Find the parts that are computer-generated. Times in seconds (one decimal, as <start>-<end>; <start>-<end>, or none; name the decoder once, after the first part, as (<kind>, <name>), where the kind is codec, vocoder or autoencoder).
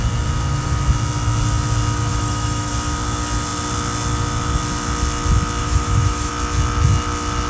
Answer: 2.1-2.7 (autoencoder, DAC-VAE); 5.6-6.3